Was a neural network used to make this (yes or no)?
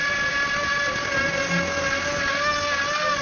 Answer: no